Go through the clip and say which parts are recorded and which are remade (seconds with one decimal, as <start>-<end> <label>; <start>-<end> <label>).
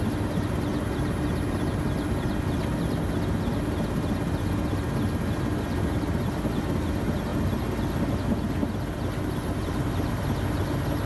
0.0-11.1 recorded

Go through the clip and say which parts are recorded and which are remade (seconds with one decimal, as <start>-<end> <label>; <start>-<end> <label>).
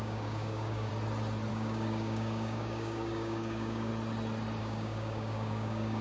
0.0-0.9 remade; 0.9-1.5 recorded; 1.5-3.9 remade; 3.9-4.6 recorded; 4.6-6.0 remade